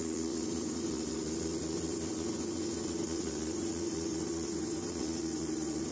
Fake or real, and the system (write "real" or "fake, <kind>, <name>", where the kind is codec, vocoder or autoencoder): fake, vocoder, Vocos